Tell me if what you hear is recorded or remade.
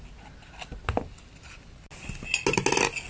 recorded